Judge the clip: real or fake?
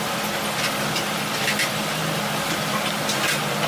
real